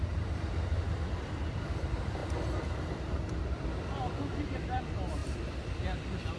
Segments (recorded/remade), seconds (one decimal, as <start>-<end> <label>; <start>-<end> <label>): 0.0-6.4 remade